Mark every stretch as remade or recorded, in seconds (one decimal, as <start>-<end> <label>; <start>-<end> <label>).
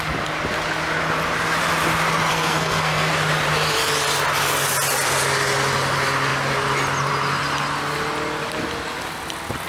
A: 0.0-2.3 recorded; 2.3-3.1 remade; 3.1-9.7 recorded